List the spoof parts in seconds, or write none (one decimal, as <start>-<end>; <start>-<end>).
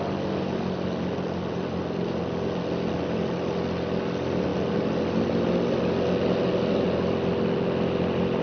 none